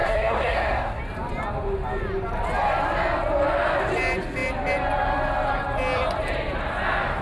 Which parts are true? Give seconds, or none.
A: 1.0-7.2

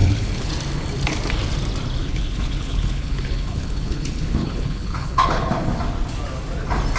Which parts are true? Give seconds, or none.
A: 0.5-2.0; 5.5-7.0